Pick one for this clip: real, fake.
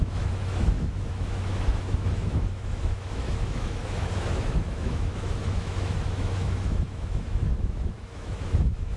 fake